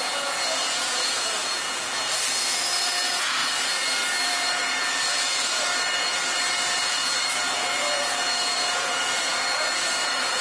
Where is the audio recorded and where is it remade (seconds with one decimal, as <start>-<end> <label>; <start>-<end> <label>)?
0.0-3.4 remade; 3.4-4.3 recorded; 4.3-10.4 remade